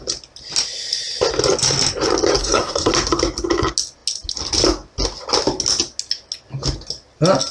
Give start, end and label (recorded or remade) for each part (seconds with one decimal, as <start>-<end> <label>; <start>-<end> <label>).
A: 0.0-2.4 recorded; 2.4-2.9 remade; 2.9-7.5 recorded